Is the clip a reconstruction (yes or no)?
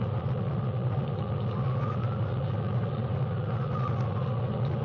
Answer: yes